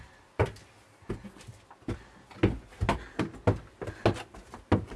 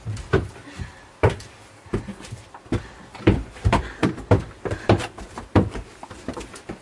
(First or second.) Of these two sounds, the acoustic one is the first